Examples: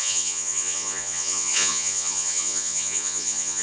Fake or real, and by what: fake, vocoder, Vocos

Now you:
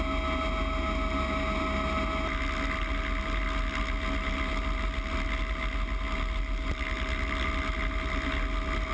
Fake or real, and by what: real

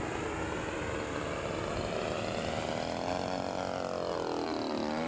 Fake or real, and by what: real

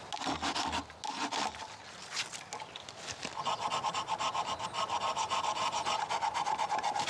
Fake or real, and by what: real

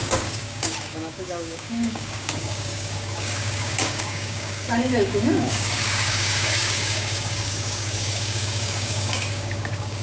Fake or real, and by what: fake, codec, DAC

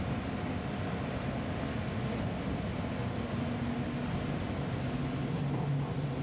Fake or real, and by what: real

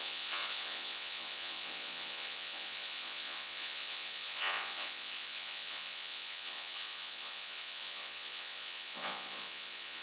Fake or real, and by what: fake, vocoder, Vocos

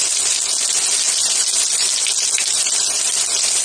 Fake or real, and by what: real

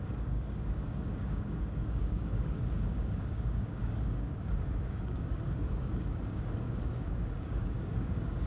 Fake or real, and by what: fake, codec, DAC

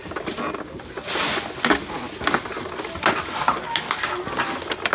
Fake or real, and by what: real